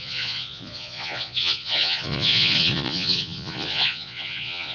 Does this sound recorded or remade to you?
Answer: remade